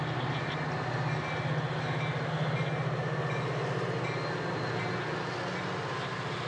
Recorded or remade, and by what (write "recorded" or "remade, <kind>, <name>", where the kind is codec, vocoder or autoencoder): recorded